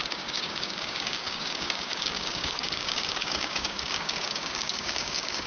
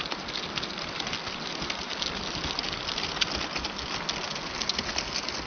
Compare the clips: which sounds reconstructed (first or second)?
first